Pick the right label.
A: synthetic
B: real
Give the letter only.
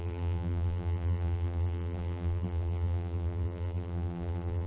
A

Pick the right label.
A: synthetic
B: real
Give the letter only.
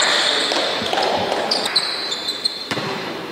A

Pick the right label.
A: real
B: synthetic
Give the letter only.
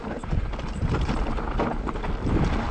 A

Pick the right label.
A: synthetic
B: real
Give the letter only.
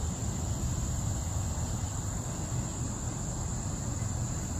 B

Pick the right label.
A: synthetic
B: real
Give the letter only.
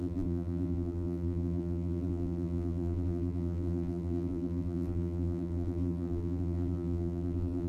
A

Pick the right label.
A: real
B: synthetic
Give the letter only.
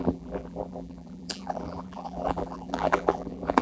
B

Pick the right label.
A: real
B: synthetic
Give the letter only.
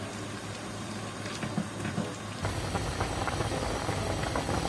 A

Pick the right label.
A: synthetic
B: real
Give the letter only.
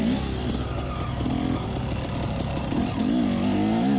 B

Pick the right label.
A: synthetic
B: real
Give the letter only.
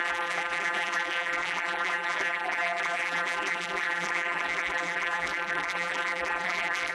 A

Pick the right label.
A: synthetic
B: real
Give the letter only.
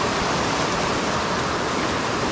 B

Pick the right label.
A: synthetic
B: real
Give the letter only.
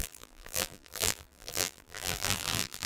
A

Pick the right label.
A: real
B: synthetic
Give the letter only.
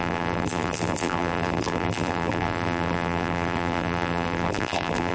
B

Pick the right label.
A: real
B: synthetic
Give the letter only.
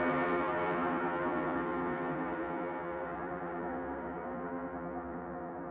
B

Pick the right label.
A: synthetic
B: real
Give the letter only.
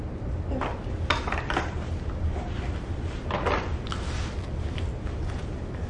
B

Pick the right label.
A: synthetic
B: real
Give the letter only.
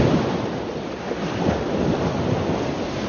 B